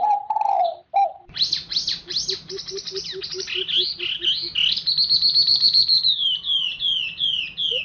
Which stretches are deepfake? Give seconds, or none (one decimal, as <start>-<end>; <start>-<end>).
5.5-7.3